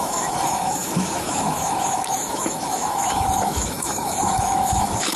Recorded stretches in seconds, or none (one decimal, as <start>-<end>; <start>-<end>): none